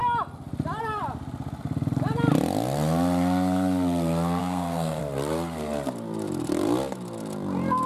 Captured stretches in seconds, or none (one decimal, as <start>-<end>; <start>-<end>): 0.0-4.4; 5.0-7.9